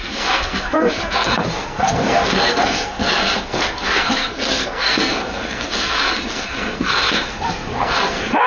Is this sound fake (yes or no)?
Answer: yes